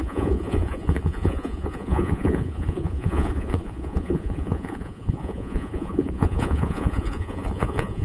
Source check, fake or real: fake